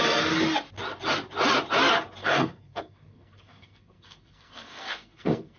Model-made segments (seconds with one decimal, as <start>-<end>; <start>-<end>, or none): 2.2-5.6

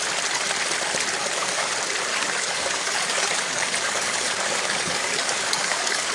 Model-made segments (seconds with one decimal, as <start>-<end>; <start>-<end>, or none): 1.2-1.7; 2.1-6.1